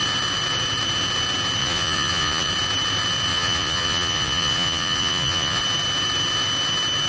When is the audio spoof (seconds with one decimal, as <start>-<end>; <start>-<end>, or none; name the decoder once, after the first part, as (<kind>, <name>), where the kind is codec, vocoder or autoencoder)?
1.6-2.5 (vocoder, Vocos); 3.3-5.6